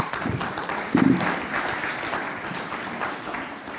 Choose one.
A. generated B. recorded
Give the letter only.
A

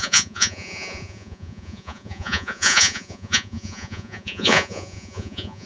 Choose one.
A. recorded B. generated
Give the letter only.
B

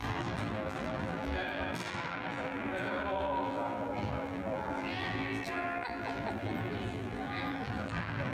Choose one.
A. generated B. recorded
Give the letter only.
A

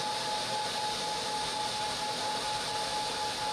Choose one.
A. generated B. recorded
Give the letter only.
B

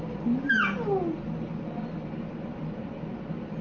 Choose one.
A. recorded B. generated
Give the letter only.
A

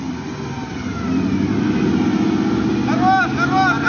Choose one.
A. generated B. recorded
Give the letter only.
B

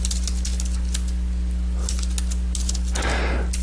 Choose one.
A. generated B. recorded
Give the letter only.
B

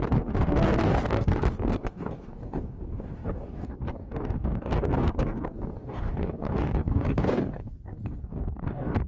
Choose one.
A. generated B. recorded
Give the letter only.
A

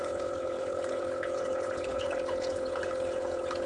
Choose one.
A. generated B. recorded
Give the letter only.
A